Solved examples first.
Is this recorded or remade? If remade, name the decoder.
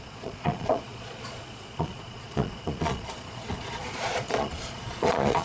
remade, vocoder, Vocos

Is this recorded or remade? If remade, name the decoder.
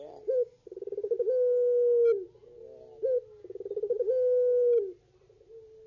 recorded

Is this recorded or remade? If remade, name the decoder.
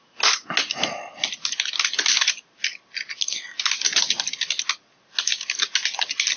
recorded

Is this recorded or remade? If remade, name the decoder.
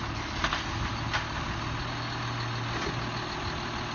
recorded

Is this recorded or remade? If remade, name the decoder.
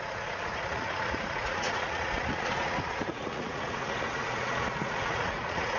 remade, vocoder, Vocos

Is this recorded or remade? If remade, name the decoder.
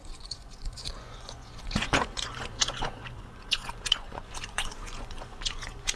remade, vocoder, Vocos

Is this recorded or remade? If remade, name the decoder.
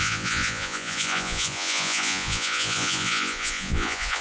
remade, vocoder, Vocos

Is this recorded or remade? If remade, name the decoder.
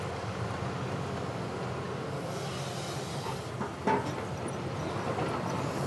recorded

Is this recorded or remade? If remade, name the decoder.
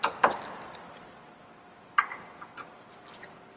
recorded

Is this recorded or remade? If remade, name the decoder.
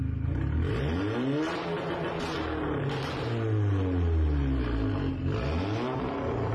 recorded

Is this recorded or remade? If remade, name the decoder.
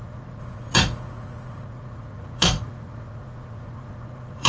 remade, vocoder, Vocos